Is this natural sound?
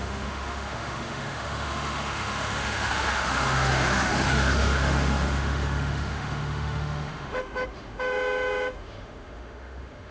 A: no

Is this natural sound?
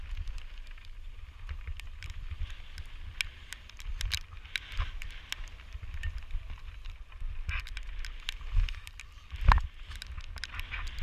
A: yes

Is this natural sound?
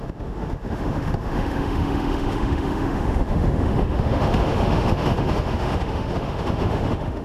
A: no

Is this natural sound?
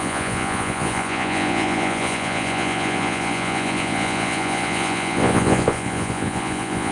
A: no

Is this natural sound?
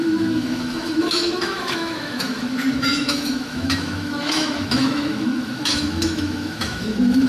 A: no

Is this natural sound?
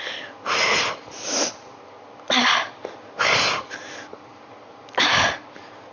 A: yes